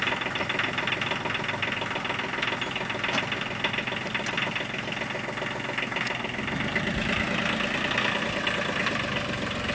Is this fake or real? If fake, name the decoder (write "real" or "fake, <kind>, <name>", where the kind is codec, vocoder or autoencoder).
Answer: real